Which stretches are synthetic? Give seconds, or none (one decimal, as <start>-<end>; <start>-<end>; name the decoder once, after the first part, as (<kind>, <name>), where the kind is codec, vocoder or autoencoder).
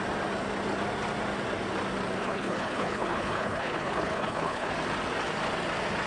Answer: 2.2-4.7 (codec, HILCodec)